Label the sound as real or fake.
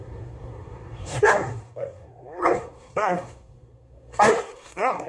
fake